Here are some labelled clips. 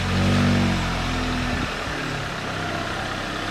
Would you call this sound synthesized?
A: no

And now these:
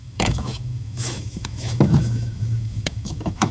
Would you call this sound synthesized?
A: yes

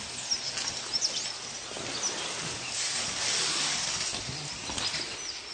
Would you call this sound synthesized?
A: no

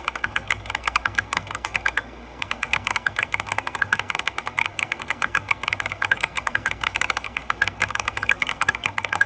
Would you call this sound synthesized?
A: yes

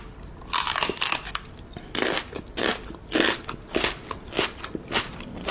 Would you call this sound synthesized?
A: no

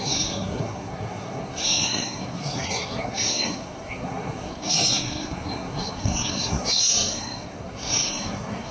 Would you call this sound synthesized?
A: yes